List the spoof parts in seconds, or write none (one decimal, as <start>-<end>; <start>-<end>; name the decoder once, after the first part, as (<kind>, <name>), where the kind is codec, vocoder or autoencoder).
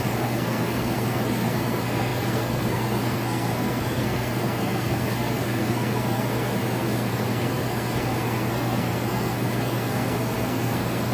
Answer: 0.0-11.1 (codec, SNAC)